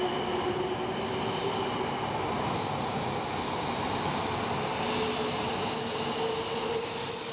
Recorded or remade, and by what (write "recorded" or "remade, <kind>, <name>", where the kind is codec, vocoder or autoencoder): recorded